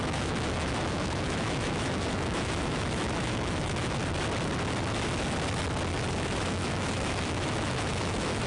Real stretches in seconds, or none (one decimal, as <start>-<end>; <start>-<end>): 4.0-6.2